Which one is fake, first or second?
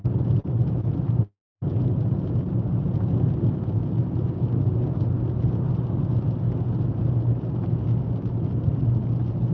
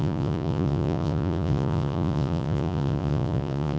second